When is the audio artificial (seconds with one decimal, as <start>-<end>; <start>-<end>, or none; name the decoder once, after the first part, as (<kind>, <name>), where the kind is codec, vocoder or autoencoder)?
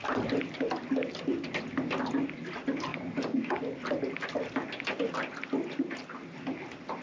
2.9-3.6 (codec, DAC)